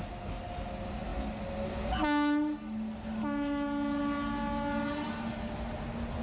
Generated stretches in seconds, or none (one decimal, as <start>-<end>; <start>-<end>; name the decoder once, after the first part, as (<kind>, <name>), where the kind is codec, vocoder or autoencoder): none